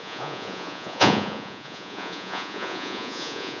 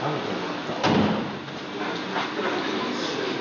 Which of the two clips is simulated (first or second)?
first